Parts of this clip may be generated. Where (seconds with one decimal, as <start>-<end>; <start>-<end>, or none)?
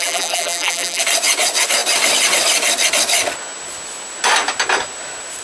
0.0-1.0